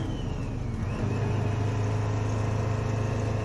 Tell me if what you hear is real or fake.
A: real